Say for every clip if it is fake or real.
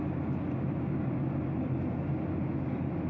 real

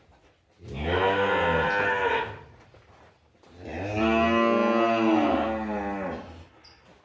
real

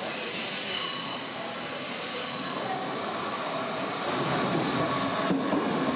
real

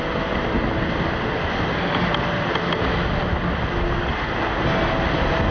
real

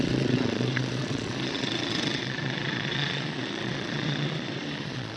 fake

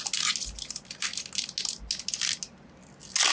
real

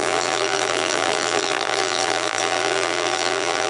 fake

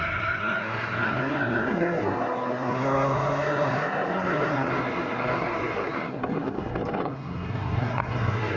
fake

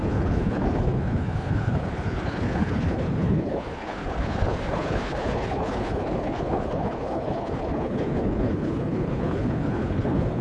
fake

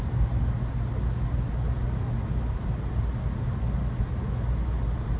real